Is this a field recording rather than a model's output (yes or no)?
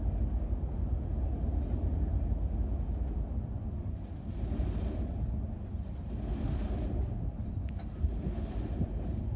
yes